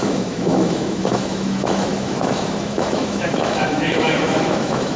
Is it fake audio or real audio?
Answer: fake